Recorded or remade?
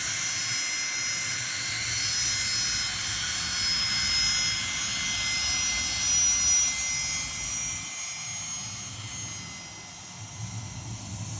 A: recorded